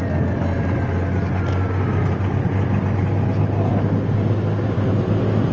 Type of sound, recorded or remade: recorded